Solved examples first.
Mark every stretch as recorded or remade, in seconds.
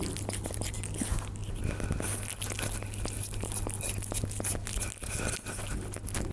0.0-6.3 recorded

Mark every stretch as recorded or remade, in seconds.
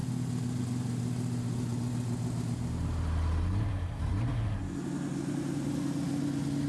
0.0-6.7 recorded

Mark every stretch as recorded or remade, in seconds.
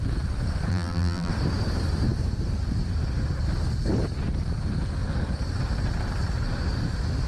0.0-0.7 recorded; 0.7-1.3 remade; 1.3-7.3 recorded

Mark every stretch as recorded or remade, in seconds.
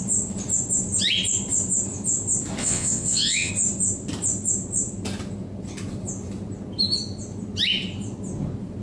0.0-2.6 recorded; 2.6-3.5 remade; 3.5-8.8 recorded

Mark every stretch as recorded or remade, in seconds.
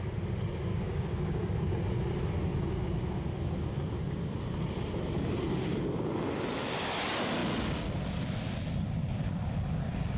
0.0-0.7 recorded; 0.7-1.6 remade; 1.6-10.2 recorded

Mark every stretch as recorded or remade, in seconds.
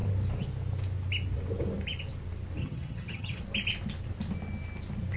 0.0-2.6 recorded; 2.6-3.4 remade; 3.4-5.2 recorded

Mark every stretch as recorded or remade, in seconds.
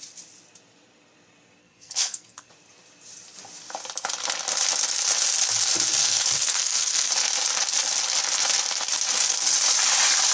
0.0-1.6 recorded; 1.6-2.5 remade; 2.5-6.0 recorded; 6.0-7.1 remade; 7.1-10.3 recorded